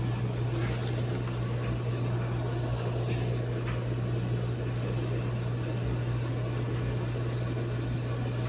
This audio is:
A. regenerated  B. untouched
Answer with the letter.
B